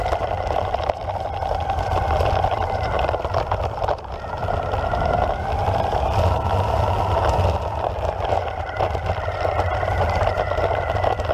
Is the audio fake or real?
real